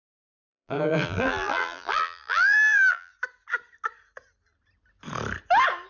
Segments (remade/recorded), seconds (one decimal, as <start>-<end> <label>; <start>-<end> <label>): 0.0-3.1 remade; 3.1-5.9 recorded